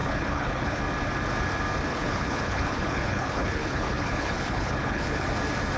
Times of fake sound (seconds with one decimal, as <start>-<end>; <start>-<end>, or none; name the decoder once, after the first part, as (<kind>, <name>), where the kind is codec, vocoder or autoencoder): 0.0-0.8 (codec, HILCodec); 1.9-5.3